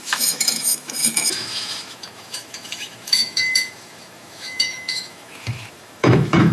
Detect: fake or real fake